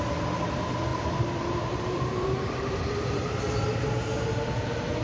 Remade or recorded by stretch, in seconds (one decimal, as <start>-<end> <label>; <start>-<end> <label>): 0.0-0.9 recorded; 0.9-3.3 remade; 3.3-5.0 recorded

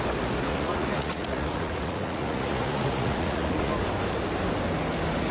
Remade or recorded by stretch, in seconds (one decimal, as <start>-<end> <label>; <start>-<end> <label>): 0.0-0.5 recorded; 0.5-3.7 remade; 3.7-5.3 recorded

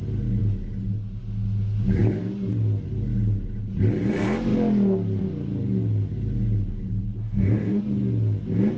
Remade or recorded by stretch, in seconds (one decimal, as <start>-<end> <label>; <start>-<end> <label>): 0.0-7.2 recorded; 7.2-7.8 remade; 7.8-8.8 recorded

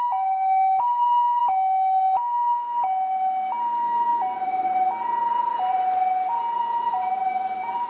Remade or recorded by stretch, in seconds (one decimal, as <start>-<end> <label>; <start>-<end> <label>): 0.0-7.9 recorded